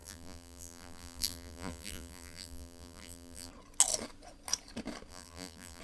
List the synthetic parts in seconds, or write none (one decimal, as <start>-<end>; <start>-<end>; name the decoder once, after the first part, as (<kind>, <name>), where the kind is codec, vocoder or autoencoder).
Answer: 0.0-3.5 (vocoder, BigVGAN v2); 5.1-5.8